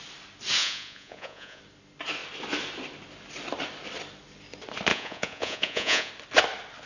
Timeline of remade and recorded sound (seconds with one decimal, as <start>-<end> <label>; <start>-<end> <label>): 0.0-0.6 recorded; 0.6-1.6 remade; 1.6-4.9 recorded; 4.9-6.1 remade; 6.1-6.9 recorded